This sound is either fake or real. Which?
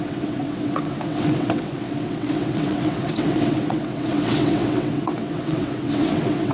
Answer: fake